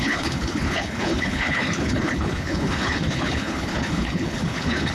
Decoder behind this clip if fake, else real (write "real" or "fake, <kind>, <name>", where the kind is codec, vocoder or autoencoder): fake, codec, HILCodec